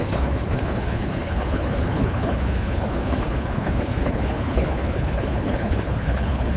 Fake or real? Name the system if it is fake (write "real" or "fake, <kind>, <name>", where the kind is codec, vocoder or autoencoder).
fake, codec, HILCodec